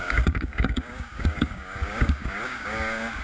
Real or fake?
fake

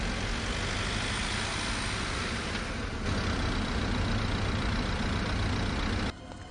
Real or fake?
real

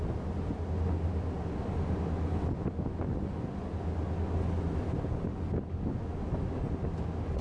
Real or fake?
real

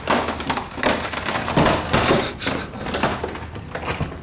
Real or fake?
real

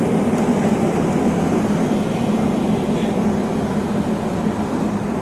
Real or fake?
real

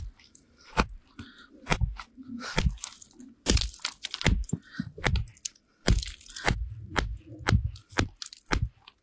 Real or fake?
real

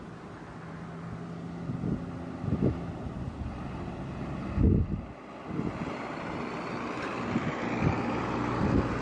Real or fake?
real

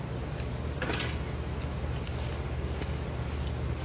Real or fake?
real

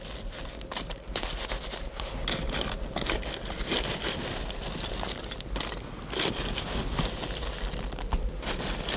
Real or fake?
real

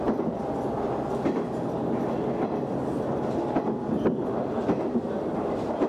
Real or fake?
real